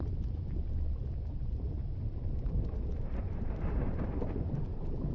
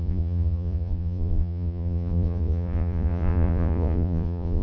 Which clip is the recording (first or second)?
first